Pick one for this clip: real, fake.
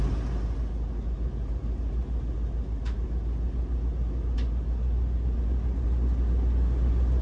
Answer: real